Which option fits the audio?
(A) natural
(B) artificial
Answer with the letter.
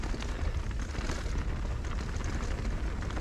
A